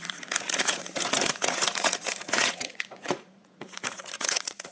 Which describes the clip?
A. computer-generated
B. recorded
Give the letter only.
A